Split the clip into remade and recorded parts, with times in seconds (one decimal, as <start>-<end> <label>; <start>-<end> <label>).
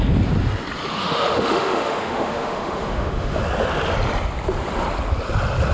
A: 0.0-1.0 recorded; 1.0-3.4 remade; 3.4-5.7 recorded